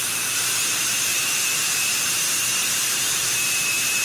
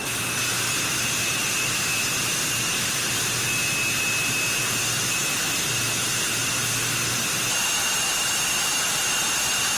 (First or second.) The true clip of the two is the second